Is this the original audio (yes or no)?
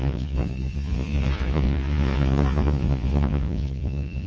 no